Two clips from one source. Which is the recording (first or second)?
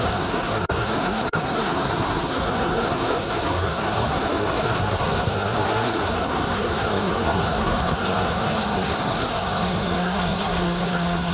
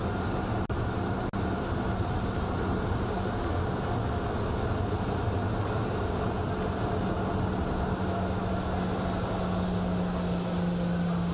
second